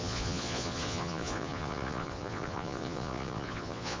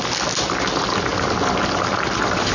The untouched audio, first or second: second